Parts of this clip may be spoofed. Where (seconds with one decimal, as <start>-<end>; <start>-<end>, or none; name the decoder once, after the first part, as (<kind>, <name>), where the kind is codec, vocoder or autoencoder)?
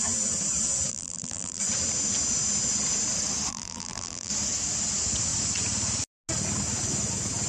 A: 0.9-1.6 (vocoder, BigVGAN v2); 3.5-4.3